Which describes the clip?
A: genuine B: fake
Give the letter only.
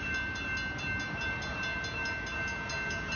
A